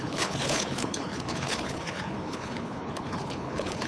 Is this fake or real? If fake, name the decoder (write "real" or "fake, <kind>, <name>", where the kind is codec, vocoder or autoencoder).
fake, codec, HILCodec